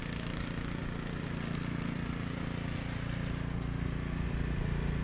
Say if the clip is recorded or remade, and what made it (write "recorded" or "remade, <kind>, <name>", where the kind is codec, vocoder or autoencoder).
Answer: recorded